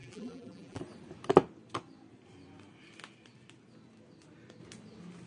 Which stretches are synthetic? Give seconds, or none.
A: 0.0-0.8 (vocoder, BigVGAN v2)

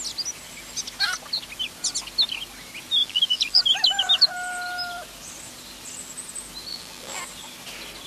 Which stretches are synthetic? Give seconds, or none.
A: 3.0-3.6 (vocoder, BigVGAN v2); 6.7-7.2

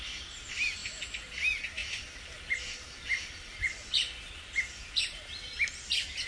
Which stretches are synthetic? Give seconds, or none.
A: 0.8-1.4 (vocoder, BigVGAN v2); 1.8-5.3

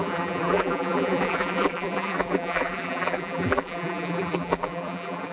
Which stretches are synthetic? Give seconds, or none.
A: 0.0-5.3 (vocoder, BigVGAN v2)

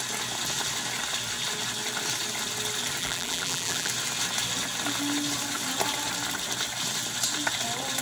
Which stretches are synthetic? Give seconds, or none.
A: 3.0-3.9 (vocoder, BigVGAN v2)

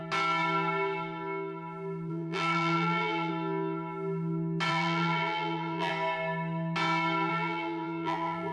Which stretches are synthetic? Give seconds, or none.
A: 2.1-3.3 (vocoder, BigVGAN v2); 4.7-5.9; 7.3-8.5

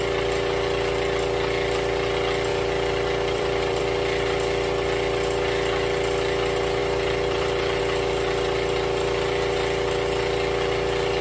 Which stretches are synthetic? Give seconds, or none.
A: 2.5-3.8 (vocoder, BigVGAN v2); 6.8-7.8

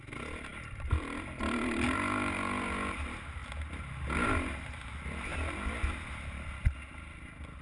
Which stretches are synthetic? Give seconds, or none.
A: 0.5-1.8 (vocoder, BigVGAN v2); 3.4-4.0